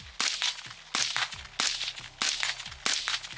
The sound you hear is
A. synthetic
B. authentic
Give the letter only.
B